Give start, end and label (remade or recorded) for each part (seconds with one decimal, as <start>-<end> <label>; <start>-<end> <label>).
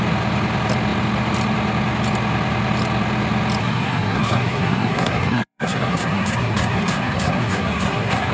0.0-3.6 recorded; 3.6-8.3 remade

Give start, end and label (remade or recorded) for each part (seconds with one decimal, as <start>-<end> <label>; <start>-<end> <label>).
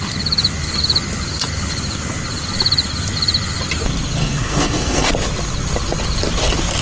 0.0-4.2 recorded; 4.2-5.1 remade; 5.1-6.8 recorded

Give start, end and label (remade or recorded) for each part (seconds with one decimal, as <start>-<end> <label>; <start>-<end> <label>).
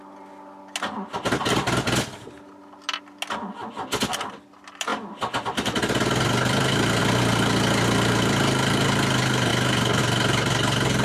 0.0-11.0 recorded